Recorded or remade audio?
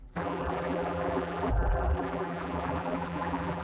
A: remade